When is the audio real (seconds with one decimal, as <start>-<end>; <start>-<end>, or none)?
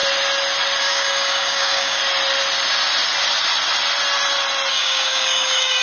0.0-0.8; 2.0-4.7